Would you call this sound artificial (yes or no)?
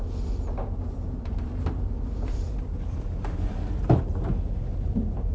yes